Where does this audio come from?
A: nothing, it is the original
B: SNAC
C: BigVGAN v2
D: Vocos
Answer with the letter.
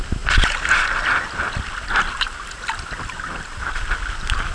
A